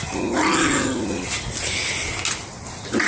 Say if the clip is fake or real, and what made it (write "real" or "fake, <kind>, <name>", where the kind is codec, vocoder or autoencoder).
real